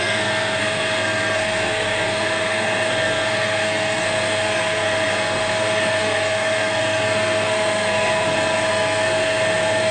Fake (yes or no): yes